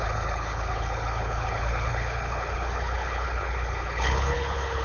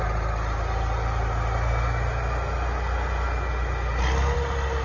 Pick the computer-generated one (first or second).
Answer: first